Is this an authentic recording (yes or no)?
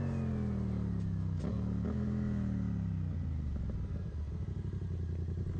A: yes